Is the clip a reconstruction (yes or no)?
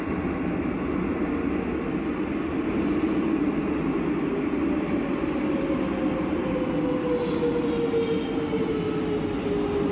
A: no